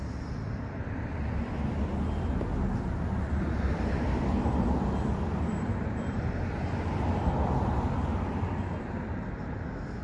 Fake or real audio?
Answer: real